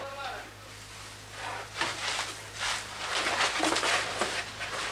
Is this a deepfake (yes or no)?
no